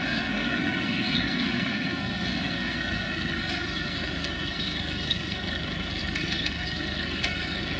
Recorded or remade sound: remade